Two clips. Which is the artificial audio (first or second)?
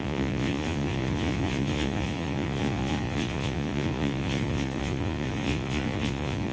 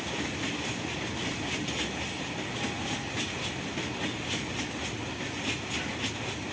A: first